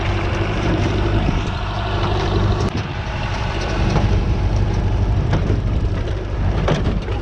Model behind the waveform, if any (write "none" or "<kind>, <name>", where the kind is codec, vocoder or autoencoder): vocoder, BigVGAN v2